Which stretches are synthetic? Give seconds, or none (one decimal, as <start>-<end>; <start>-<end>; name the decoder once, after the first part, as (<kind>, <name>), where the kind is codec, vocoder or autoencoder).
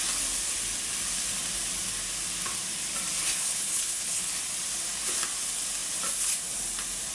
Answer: 3.2-4.4 (codec, HILCodec)